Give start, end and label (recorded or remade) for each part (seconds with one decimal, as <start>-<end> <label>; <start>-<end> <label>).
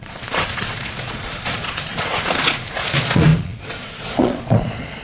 0.0-5.0 remade